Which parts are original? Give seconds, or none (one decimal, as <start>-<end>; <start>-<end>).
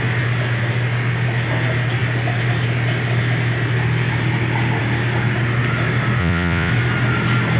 0.0-6.2; 6.7-7.6